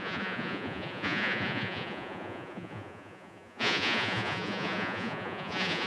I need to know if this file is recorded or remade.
remade